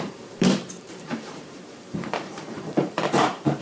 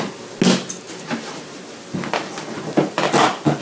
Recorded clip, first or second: second